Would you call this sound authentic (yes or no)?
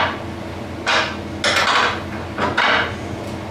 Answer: yes